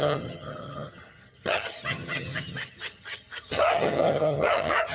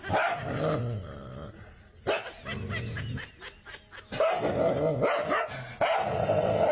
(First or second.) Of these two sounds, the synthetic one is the first